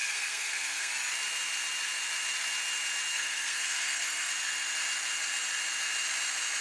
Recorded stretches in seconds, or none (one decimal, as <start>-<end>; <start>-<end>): 0.9-3.1; 4.3-6.6